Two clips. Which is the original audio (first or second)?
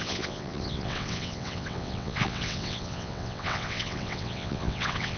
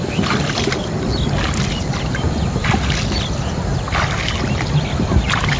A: second